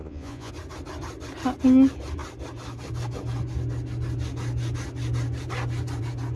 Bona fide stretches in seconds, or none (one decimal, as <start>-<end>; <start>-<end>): 0.5-6.4